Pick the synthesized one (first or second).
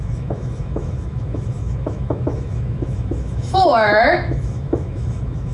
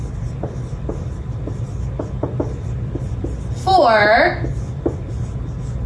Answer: first